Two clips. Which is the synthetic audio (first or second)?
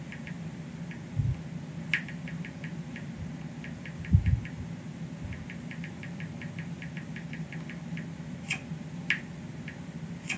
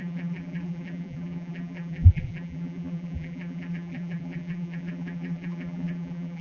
second